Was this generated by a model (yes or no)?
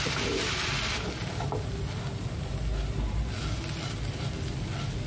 no